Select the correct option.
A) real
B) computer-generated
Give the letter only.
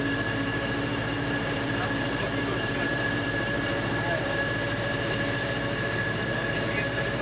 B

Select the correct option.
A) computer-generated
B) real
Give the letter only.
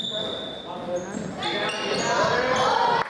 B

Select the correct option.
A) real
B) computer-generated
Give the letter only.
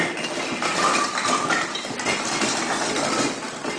A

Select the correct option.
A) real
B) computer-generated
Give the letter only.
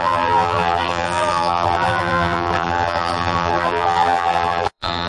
B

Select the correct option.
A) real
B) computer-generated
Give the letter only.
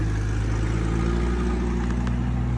A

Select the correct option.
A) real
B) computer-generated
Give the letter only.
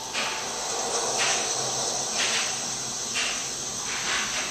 A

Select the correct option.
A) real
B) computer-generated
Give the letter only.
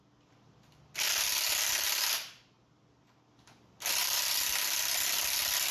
A